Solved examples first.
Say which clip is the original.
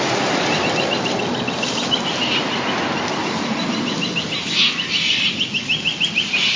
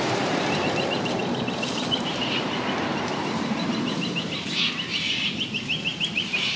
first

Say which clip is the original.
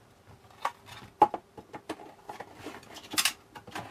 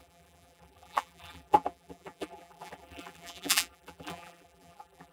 first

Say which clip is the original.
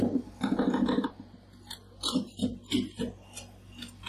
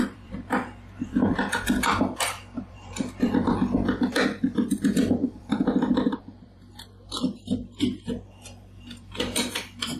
first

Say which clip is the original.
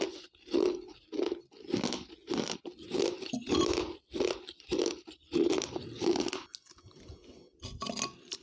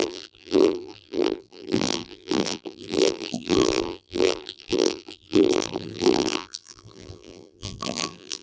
first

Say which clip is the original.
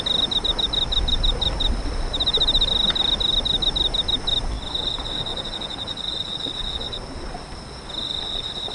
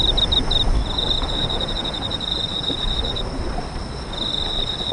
first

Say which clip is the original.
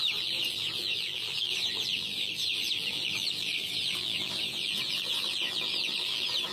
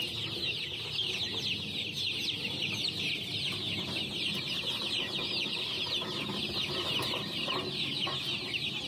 second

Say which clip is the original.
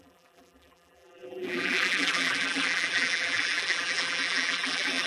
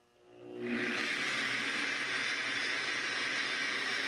second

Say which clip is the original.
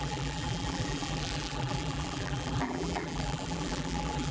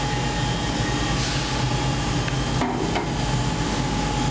second